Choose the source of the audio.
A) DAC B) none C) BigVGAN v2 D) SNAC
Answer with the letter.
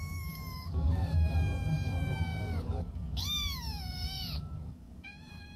A